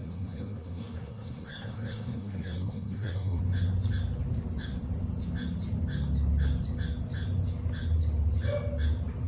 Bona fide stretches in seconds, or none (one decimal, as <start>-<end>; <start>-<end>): 3.4-9.3